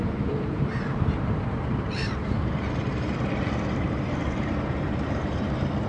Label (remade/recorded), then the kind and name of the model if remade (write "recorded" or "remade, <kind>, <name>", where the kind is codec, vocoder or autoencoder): remade, vocoder, BigVGAN v2